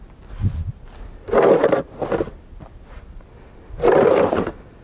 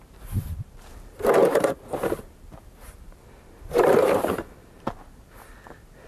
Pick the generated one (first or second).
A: second